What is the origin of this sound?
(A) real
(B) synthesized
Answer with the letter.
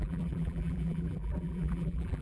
B